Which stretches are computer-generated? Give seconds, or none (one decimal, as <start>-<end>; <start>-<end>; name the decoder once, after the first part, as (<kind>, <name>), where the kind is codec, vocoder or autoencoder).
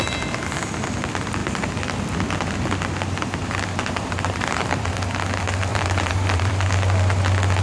3.4-4.9 (vocoder, BigVGAN v2); 5.7-6.5